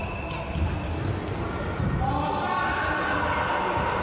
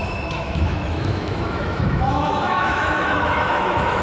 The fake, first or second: second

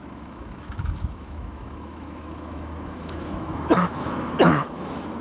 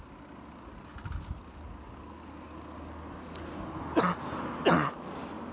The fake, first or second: first